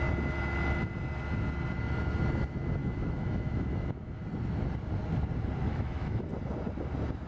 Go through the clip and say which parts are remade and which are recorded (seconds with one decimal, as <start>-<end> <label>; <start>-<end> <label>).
0.0-2.8 recorded; 2.8-4.2 remade; 4.2-5.7 recorded; 5.7-6.3 remade; 6.3-7.3 recorded